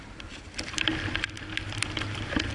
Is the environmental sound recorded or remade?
recorded